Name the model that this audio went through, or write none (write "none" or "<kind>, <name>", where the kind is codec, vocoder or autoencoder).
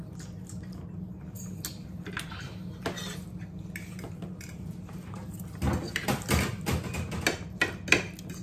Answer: none